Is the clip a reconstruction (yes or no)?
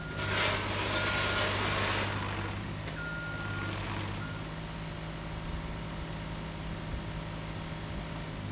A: no